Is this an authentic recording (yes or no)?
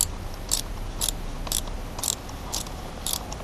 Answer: yes